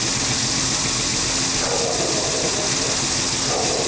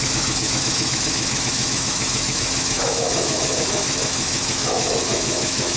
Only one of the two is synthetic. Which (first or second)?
second